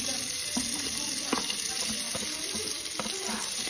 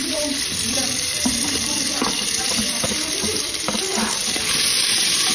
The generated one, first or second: second